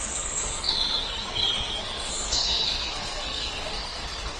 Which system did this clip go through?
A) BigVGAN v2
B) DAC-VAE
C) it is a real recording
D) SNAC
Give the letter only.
D